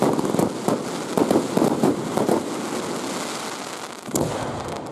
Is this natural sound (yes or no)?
yes